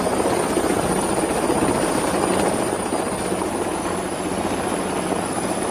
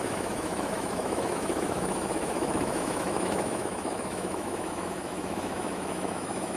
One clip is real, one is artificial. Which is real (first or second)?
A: first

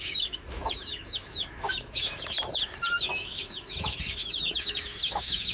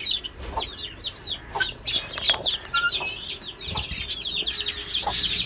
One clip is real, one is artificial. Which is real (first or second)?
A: second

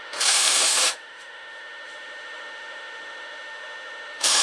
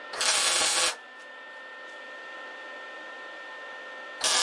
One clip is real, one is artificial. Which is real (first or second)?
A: second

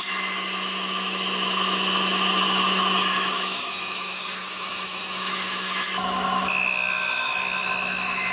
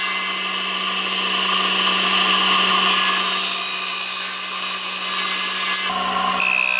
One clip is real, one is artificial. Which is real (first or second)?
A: second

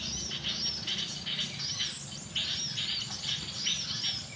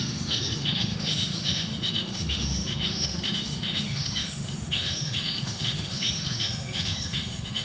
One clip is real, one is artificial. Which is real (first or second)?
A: first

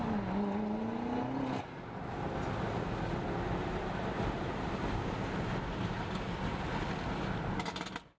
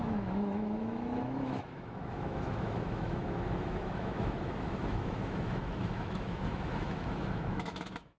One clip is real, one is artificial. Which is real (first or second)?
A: first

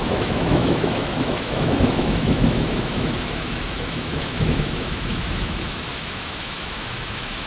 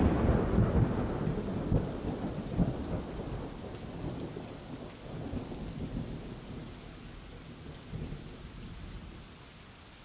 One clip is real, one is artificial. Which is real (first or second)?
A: second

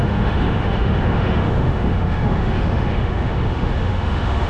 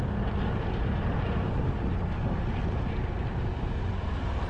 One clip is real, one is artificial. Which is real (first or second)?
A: second